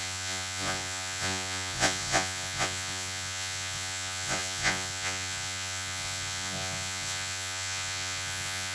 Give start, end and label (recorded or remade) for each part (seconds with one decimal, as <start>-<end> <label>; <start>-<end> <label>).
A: 0.0-8.7 remade